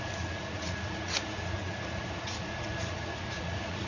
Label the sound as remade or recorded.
remade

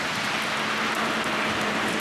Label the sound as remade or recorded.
recorded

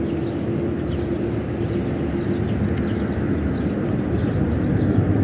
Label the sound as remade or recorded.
recorded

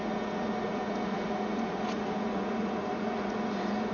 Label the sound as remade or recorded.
remade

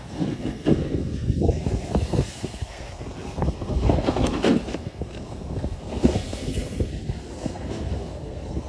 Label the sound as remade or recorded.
remade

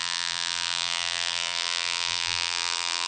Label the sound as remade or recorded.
remade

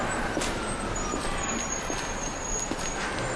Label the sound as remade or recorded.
recorded